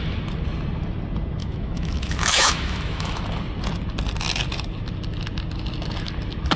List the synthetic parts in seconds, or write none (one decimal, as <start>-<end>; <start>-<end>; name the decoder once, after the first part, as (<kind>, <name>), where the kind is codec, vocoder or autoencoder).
1.4-3.2 (autoencoder, DAC-VAE)